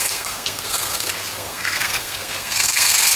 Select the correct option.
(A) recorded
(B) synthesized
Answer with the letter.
B